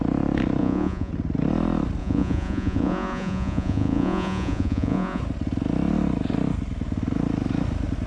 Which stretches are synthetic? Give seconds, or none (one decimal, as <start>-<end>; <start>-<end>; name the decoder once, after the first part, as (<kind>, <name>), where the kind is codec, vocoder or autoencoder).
0.6-1.1 (vocoder, Vocos); 2.0-5.2